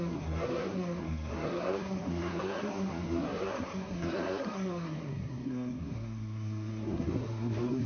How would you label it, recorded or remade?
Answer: remade